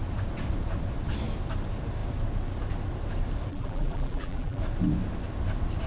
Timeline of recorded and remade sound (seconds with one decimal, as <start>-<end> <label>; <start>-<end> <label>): 0.0-3.5 recorded; 3.5-4.6 remade; 4.6-5.9 recorded